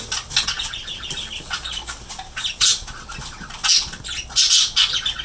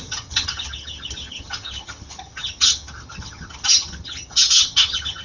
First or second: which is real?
first